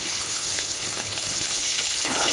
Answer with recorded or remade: remade